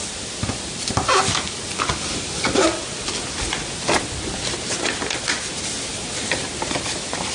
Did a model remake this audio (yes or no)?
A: no